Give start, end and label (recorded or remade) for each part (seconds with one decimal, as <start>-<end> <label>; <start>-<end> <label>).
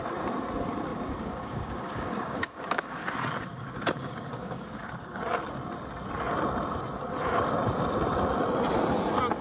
0.0-0.9 recorded; 0.9-5.2 remade; 5.2-9.4 recorded